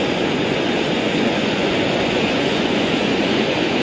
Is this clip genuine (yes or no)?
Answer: no